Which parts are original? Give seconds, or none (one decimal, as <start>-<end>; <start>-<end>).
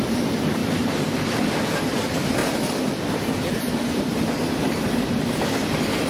2.4-5.5